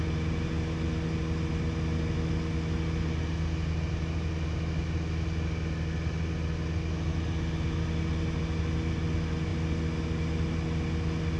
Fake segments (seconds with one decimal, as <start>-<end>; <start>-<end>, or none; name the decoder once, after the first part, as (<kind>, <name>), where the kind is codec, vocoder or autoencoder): none